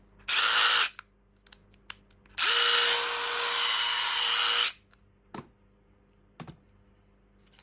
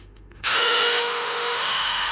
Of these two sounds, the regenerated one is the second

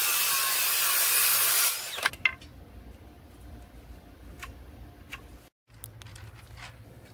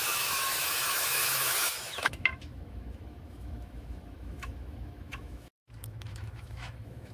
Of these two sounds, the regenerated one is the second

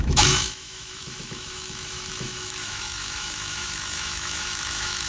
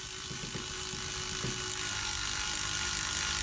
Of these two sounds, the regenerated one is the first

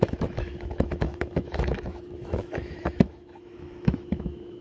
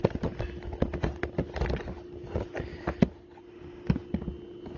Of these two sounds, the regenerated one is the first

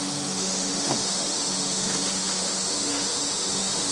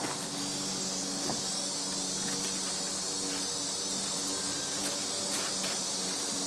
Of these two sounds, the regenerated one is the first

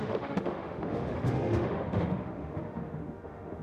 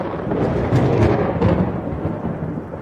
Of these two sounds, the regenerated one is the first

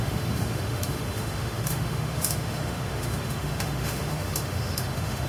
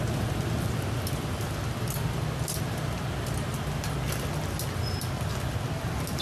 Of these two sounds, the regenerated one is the first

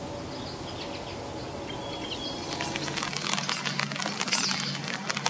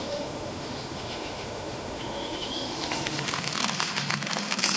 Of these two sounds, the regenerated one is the second